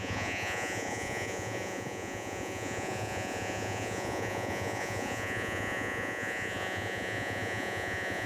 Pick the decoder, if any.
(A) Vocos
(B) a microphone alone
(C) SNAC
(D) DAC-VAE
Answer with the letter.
A